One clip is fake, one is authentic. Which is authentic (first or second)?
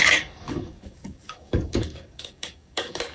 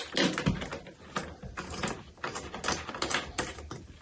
second